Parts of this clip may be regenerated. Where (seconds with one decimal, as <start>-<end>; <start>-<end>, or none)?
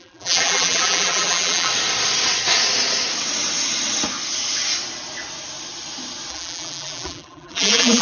0.0-1.7; 6.3-8.0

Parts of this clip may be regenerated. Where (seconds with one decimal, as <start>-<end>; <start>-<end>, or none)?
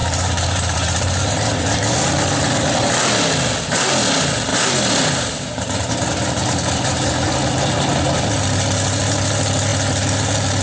0.0-1.6; 4.5-7.6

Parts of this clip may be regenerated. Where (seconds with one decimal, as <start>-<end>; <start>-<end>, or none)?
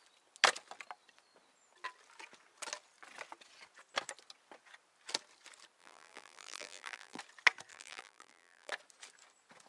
5.8-7.2; 7.7-8.7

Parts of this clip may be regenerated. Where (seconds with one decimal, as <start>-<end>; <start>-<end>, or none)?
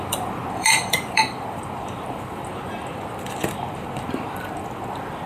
0.0-5.3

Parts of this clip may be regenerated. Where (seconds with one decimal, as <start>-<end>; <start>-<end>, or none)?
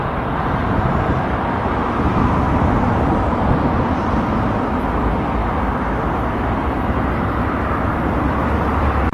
3.5-5.4; 6.0-9.1